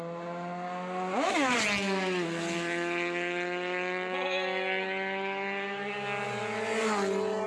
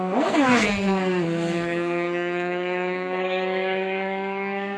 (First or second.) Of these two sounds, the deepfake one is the second